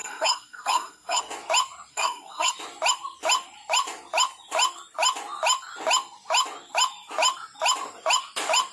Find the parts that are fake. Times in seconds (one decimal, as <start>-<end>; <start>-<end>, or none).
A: 0.0-1.2; 1.9-2.5